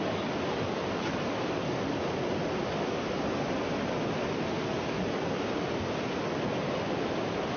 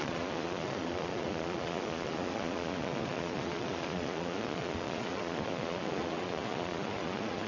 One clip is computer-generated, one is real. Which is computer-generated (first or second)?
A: second